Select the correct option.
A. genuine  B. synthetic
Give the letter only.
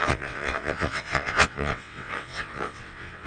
B